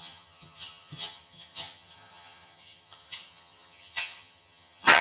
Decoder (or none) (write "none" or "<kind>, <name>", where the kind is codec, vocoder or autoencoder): vocoder, HiFi-GAN